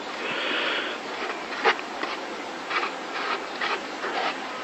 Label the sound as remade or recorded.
recorded